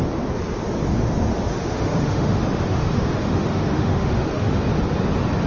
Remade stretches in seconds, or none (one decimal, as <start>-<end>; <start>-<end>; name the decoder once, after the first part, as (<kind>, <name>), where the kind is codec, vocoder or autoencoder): 1.3-4.6 (autoencoder, DAC-VAE)